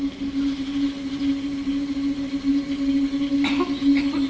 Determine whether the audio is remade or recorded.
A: recorded